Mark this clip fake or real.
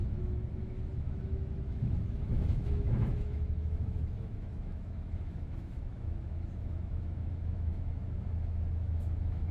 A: fake